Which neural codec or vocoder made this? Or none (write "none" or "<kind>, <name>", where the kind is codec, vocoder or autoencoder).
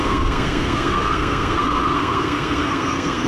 codec, SNAC